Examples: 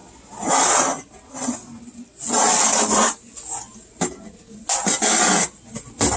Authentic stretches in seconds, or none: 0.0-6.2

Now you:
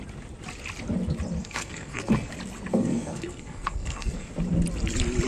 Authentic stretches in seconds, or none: 0.0-1.4; 2.3-2.7; 4.3-5.3

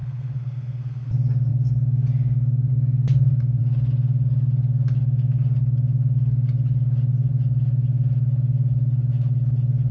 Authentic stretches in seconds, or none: 1.1-9.9

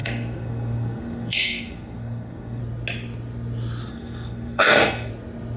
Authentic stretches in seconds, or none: 2.6-3.9; 5.1-5.6

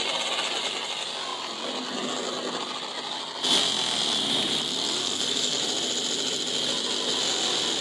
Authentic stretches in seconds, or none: 0.0-5.0; 5.6-7.8

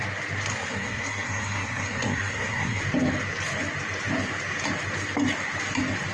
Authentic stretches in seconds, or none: 0.0-0.5; 2.8-6.1

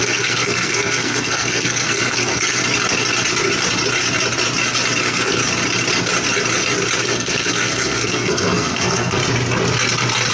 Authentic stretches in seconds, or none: 2.6-5.0; 5.4-7.0; 9.2-10.3

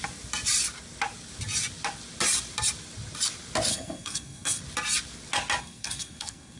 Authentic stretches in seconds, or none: 0.0-3.7; 4.6-5.6